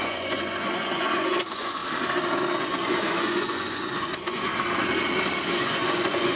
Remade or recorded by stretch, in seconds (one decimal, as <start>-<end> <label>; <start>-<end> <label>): 0.0-1.8 remade; 1.8-2.6 recorded; 2.6-4.5 remade; 4.5-5.4 recorded; 5.4-6.4 remade